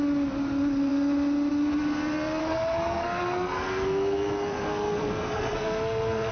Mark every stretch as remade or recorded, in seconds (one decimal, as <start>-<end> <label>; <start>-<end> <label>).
0.0-2.4 recorded; 2.4-6.3 remade